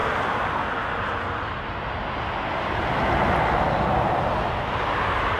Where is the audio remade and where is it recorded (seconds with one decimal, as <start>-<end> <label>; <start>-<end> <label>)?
0.0-5.4 recorded